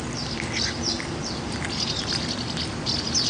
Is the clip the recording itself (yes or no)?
yes